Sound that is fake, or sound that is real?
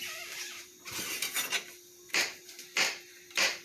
fake